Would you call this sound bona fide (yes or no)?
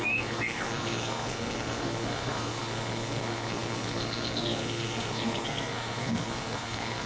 no